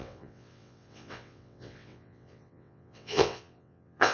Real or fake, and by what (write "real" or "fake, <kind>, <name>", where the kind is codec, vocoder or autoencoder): fake, vocoder, WaveNeXt